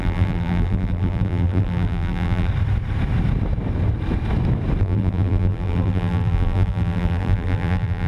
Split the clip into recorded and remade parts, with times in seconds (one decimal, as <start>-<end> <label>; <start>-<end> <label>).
0.0-2.5 remade; 2.5-4.8 recorded; 4.8-8.1 remade